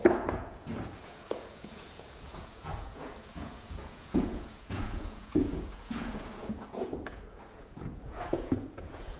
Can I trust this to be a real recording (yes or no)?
no